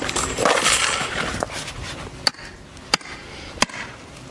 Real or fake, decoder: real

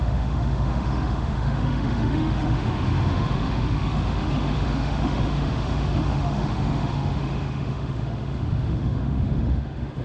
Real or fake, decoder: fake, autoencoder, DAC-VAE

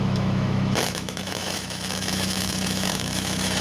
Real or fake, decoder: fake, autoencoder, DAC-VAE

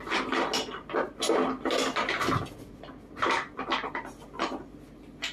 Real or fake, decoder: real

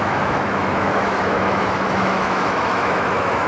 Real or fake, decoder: fake, autoencoder, DAC-VAE